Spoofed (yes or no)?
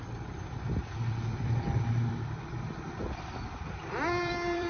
yes